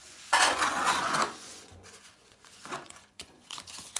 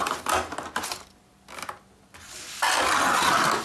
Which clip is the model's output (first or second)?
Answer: first